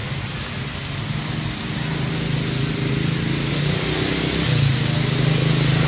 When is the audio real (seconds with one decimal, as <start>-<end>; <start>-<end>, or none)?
0.0-5.9